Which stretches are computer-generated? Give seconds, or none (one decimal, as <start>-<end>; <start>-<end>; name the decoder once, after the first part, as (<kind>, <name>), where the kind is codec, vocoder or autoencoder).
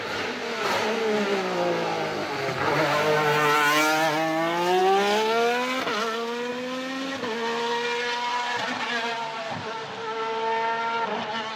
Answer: 8.3-9.7 (vocoder, BigVGAN v2)